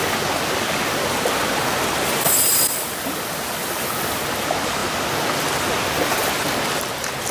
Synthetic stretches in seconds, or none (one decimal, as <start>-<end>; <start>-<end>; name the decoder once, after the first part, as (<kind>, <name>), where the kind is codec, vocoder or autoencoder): none